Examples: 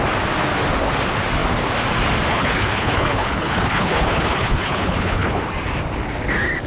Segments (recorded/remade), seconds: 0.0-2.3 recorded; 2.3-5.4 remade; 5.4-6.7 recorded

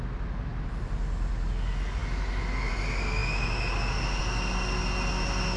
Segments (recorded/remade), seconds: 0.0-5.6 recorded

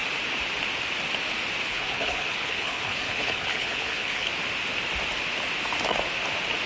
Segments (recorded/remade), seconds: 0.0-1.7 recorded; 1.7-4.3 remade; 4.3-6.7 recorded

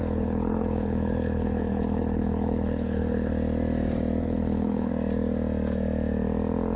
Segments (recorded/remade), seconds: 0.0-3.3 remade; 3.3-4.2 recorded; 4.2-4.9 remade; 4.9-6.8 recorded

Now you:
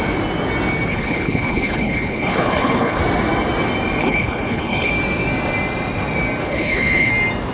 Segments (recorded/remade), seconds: 0.0-0.9 recorded; 0.9-3.0 remade; 3.0-4.0 recorded; 4.0-4.9 remade; 4.9-6.4 recorded; 6.4-7.1 remade; 7.1-7.5 recorded